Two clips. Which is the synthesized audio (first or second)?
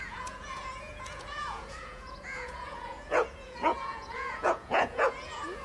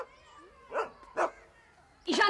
first